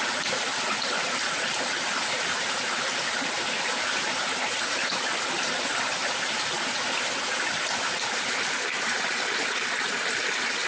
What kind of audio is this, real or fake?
real